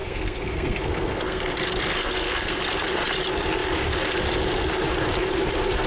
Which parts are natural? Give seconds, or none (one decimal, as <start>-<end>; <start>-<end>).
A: 1.4-2.0; 2.6-5.9